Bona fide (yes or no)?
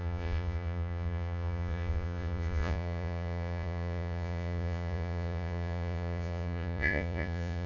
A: no